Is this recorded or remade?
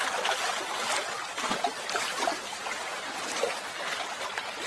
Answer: recorded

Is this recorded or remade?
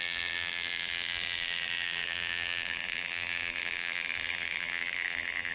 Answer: remade